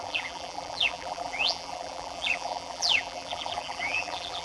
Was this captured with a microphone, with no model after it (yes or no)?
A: no